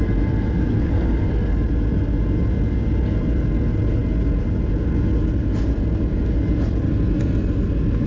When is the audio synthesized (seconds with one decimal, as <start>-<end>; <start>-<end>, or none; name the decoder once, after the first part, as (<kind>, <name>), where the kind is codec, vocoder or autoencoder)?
0.7-1.3 (codec, SNAC)